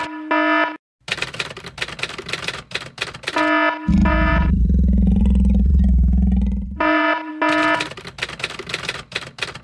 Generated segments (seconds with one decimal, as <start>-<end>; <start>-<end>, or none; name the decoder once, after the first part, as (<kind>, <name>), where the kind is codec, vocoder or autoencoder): 4.0-7.3 (vocoder, BigVGAN v2)